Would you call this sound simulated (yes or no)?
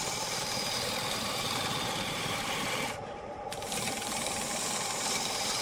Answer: yes